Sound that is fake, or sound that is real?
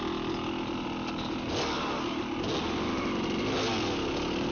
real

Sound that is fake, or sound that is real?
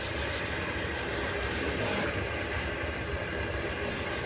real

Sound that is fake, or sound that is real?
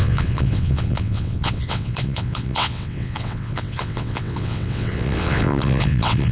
fake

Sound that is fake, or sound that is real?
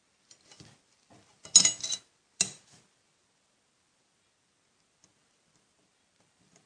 real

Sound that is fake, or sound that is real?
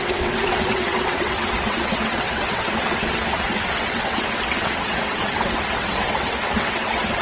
fake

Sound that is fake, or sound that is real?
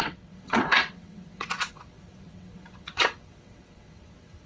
fake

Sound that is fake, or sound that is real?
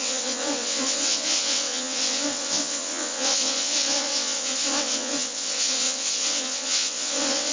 fake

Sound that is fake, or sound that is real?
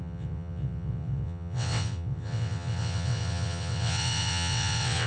fake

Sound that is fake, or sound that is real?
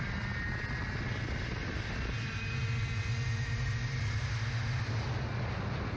real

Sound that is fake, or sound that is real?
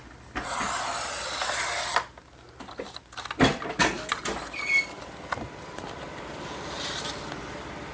real